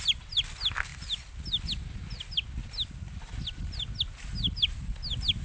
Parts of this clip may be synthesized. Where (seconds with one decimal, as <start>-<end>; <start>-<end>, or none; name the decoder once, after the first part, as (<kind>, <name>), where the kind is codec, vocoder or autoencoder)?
none